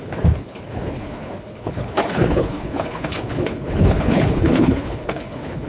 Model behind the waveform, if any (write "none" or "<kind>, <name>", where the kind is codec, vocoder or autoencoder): codec, HILCodec